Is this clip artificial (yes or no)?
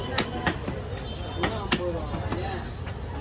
no